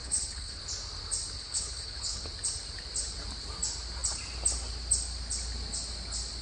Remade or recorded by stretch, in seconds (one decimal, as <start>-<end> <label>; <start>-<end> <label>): 0.0-0.6 remade; 0.6-1.4 recorded; 1.4-2.3 remade; 2.3-6.4 recorded